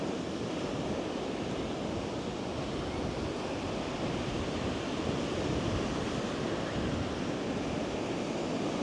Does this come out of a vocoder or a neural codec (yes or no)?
no